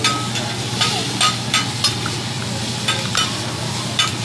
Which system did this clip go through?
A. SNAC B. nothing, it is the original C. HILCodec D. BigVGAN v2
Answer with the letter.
B